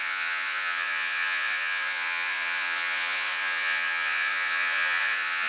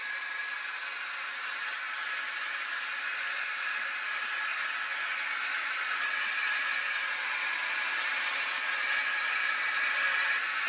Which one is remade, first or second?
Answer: first